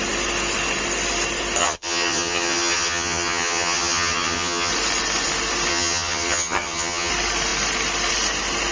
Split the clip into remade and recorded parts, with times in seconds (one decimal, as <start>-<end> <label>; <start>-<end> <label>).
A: 0.0-1.6 recorded; 1.6-4.7 remade; 4.7-5.7 recorded; 5.7-7.1 remade; 7.1-8.7 recorded